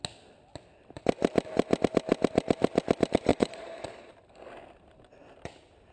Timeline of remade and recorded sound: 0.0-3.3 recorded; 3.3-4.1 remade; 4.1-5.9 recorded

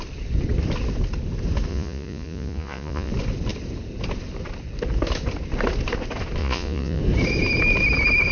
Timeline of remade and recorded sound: 0.0-1.7 recorded; 1.7-3.1 remade; 3.1-6.4 recorded; 6.4-7.0 remade; 7.0-8.3 recorded